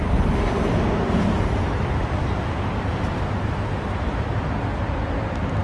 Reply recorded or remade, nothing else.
recorded